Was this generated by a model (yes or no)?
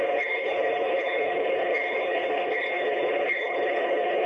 yes